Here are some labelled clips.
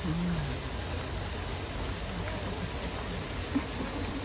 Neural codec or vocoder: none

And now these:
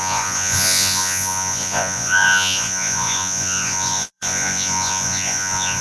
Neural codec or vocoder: vocoder, Vocos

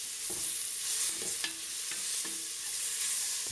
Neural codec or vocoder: none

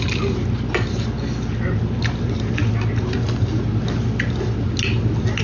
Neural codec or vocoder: none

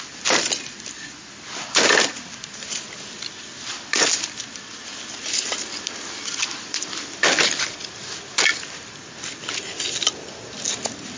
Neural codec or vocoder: none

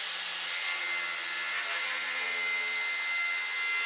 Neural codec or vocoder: none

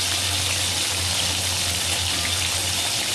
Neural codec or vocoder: none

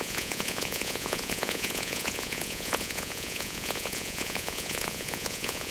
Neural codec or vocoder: vocoder, Vocos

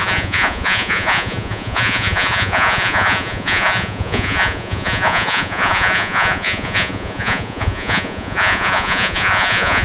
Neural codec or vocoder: vocoder, Vocos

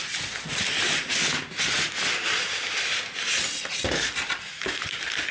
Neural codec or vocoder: none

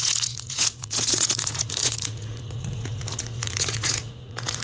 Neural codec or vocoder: vocoder, Vocos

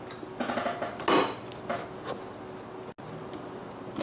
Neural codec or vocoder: none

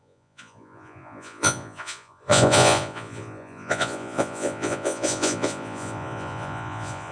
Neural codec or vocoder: vocoder, Vocos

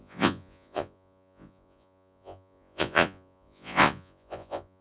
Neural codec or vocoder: vocoder, Vocos